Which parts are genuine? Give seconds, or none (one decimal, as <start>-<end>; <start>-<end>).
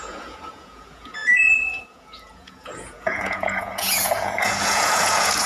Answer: none